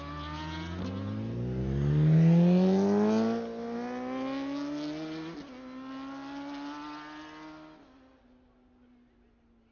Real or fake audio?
real